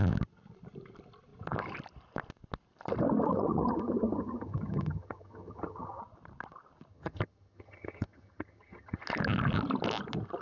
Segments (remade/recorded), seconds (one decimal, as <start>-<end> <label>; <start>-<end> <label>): 0.0-3.3 recorded; 3.3-6.0 remade; 6.0-6.9 recorded; 6.9-9.0 remade; 9.0-10.4 recorded